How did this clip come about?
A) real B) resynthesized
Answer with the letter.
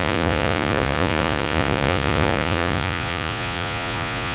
B